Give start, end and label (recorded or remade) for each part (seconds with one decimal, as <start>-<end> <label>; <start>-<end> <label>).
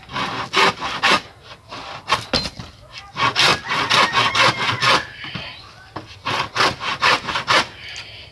0.0-8.3 recorded